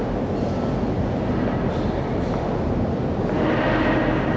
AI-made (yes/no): no